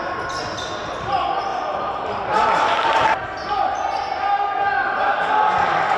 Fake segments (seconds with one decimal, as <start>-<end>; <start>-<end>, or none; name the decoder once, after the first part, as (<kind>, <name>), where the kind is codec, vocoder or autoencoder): 1.5-3.1 (vocoder, BigVGAN v2)